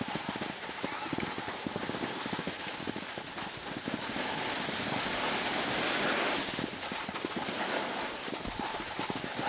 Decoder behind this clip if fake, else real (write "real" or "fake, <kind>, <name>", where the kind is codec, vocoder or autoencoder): real